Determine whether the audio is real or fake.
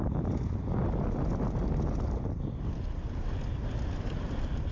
real